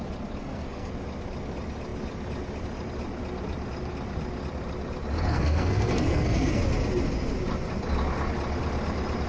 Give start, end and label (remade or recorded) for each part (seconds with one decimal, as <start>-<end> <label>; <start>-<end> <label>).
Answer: 0.0-0.4 recorded; 0.4-0.9 remade; 0.9-5.3 recorded; 5.3-6.6 remade; 6.6-9.3 recorded